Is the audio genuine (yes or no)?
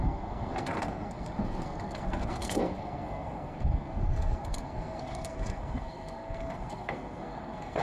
no